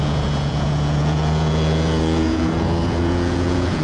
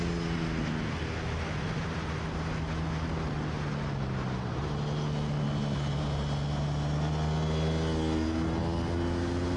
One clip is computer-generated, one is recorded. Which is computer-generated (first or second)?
first